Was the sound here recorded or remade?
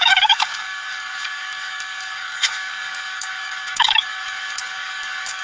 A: remade